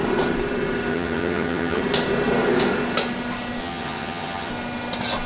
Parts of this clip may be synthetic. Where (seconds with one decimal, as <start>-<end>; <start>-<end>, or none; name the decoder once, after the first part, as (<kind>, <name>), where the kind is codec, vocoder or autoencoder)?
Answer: 0.9-1.8 (vocoder, HiFi-GAN); 3.6-4.5